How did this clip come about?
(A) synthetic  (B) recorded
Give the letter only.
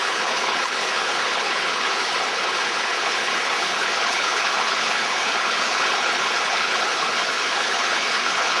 A